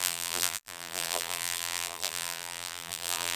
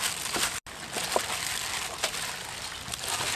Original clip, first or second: second